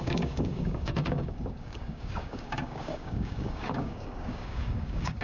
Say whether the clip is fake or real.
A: fake